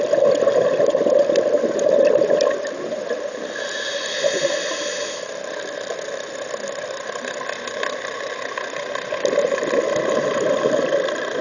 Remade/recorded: recorded